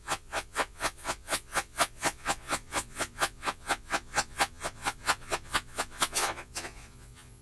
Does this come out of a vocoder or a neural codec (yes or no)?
yes